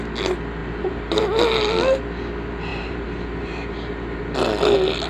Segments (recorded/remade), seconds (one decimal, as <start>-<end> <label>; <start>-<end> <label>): 0.0-0.6 recorded; 0.6-1.2 remade; 1.2-2.7 recorded; 2.7-4.2 remade; 4.2-5.1 recorded